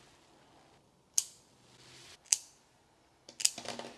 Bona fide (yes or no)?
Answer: yes